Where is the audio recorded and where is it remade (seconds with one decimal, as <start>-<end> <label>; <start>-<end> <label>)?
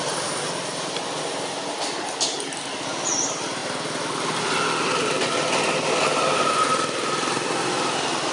0.0-8.3 recorded